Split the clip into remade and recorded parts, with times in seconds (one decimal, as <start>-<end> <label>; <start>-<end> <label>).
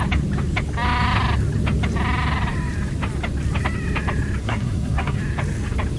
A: 0.0-4.4 recorded; 4.4-5.2 remade; 5.2-6.0 recorded